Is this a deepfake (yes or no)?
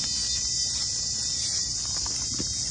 no